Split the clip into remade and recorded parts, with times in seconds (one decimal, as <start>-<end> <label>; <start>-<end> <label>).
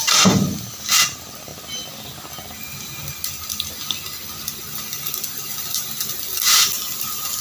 0.0-7.4 recorded